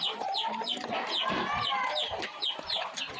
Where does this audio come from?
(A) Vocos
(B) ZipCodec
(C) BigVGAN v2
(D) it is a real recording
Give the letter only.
D